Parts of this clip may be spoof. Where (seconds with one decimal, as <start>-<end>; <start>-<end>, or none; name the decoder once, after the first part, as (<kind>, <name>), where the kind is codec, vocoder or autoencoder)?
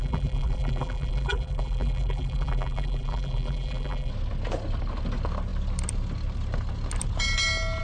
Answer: 0.0-4.1 (vocoder, BigVGAN v2)